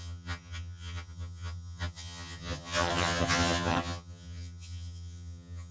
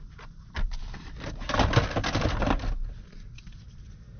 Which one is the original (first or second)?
second